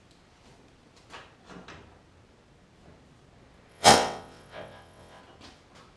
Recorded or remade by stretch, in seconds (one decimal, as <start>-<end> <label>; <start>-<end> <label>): 0.0-3.7 recorded; 3.7-5.2 remade; 5.2-6.0 recorded